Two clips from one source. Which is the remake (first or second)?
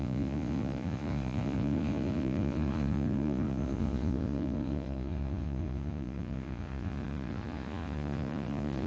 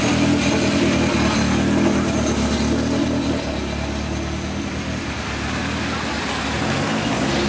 first